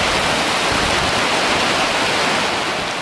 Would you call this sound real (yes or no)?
yes